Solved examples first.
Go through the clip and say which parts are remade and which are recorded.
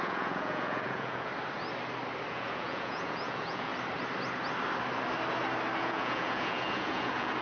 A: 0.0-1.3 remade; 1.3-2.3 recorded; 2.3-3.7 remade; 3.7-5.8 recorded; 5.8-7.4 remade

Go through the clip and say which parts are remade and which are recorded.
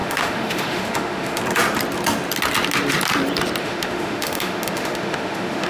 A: 0.0-1.4 remade; 1.4-3.6 recorded; 3.6-5.7 remade